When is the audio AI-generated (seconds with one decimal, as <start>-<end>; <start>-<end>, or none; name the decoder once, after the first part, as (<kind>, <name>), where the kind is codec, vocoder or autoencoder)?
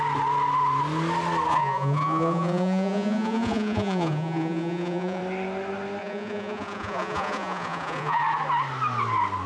1.5-5.2 (vocoder, Vocos); 6.0-8.2